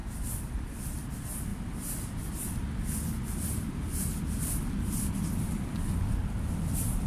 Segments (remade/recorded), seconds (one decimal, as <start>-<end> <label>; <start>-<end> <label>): 0.0-7.1 recorded